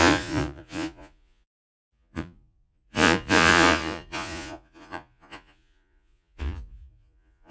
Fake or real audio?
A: fake